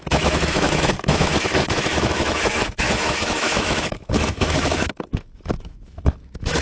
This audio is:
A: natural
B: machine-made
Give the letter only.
B